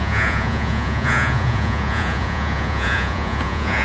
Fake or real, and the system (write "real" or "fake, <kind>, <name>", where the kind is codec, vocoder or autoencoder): fake, vocoder, Vocos